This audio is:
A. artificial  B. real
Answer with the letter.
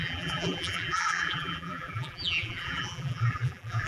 A